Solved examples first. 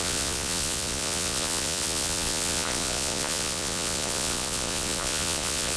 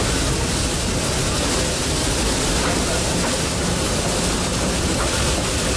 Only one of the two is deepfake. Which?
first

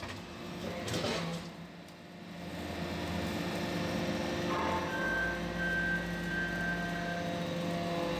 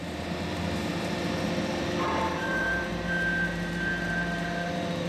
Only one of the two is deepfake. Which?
second